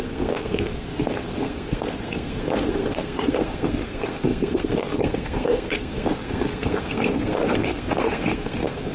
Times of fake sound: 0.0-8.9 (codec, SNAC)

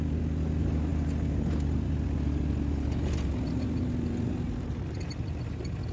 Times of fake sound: none

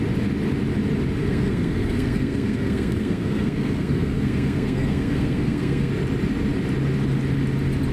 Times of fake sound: 1.2-5.9 (codec, SNAC)

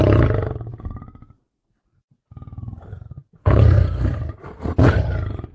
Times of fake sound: 3.4-4.2 (codec, SNAC)

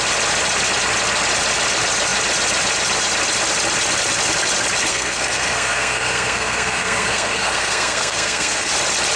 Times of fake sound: 4.9-8.7 (codec, SNAC)